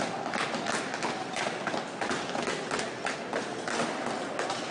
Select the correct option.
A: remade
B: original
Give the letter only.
B